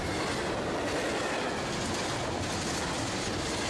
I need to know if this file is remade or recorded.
recorded